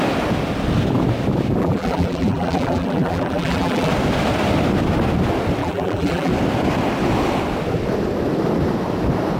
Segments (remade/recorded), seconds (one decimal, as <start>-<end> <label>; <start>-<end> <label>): 0.0-1.6 recorded; 1.6-3.9 remade; 3.9-5.6 recorded; 5.6-6.3 remade; 6.3-9.4 recorded